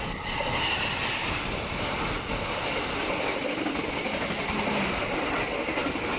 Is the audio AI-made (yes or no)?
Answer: no